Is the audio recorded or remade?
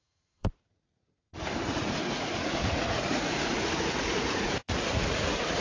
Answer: remade